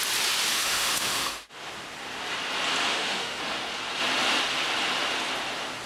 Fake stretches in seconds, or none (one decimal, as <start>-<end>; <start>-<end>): 0.5-1.5; 2.9-3.4